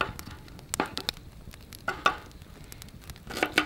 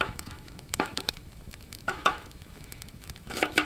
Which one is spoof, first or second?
second